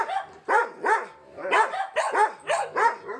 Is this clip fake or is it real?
real